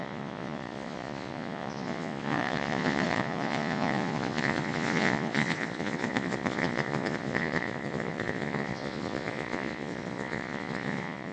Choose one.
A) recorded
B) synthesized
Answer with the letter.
B